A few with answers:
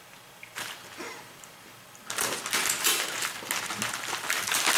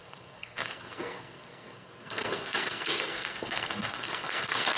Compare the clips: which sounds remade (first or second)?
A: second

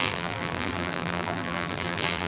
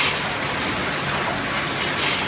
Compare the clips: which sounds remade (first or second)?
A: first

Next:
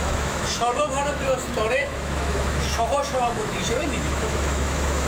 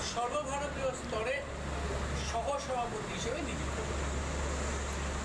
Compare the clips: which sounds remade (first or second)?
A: first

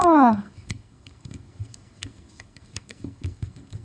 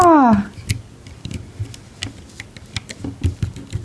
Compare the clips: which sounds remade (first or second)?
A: first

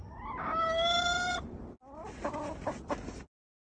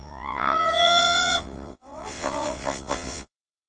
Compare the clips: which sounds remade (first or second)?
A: second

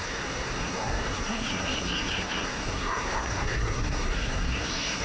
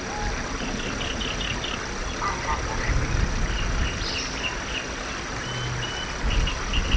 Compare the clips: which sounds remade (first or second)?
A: first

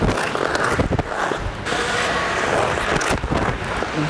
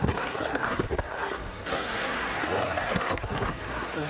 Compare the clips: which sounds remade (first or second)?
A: second